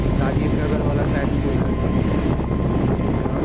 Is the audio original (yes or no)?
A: yes